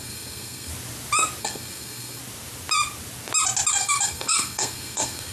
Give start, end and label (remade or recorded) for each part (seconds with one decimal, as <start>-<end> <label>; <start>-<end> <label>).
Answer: 0.0-0.7 remade; 0.7-1.4 recorded; 1.4-2.2 remade; 2.2-3.7 recorded; 3.7-5.3 remade